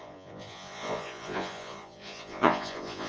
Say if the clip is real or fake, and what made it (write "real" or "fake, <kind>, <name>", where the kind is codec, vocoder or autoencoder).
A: fake, vocoder, Vocos